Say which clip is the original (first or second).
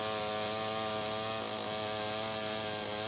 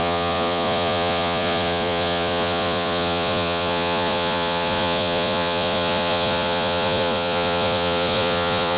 first